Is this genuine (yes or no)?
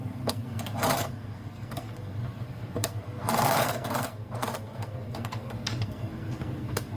no